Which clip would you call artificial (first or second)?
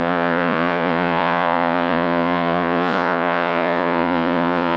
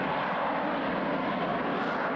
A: first